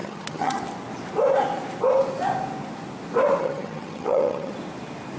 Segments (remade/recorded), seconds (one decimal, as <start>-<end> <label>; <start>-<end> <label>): 0.0-0.6 remade; 0.6-3.4 recorded; 3.4-4.5 remade; 4.5-5.2 recorded